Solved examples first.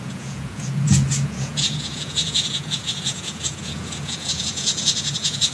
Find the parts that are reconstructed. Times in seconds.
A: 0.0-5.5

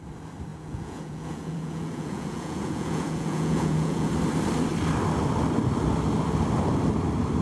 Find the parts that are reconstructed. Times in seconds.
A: 0.5-4.1

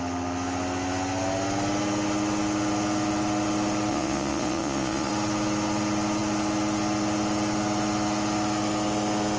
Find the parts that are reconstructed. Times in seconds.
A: 3.9-5.1